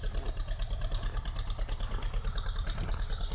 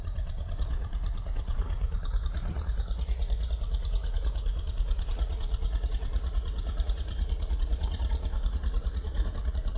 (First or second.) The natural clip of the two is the first